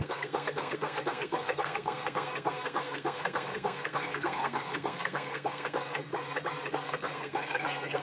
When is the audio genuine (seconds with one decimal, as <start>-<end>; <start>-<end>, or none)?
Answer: 6.1-6.7